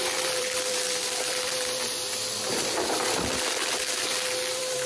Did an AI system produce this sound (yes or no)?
yes